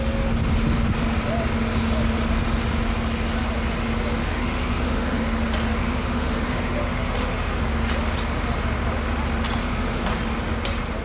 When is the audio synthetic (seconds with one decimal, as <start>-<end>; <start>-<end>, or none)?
4.2-5.2; 5.8-7.6; 9.6-10.1